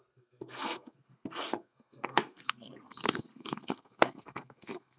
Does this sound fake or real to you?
fake